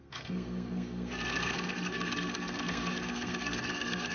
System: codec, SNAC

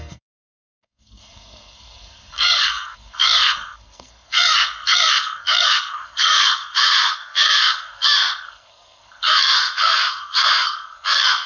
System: codec, SNAC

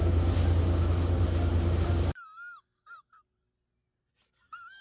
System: none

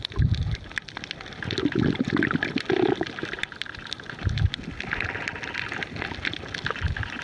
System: none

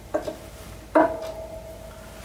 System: none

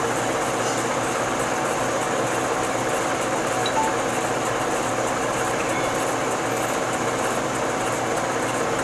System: none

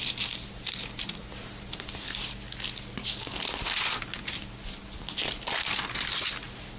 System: none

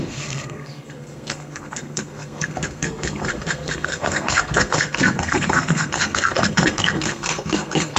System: codec, SNAC